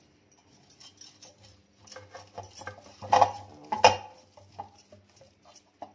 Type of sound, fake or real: real